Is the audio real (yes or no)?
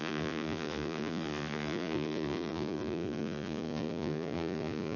no